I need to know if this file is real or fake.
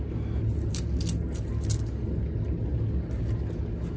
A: real